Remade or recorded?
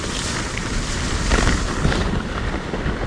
recorded